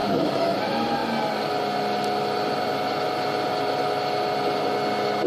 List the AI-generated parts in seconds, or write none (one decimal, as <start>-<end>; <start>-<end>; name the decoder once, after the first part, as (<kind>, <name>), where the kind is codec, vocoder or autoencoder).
0.0-0.5 (codec, DAC)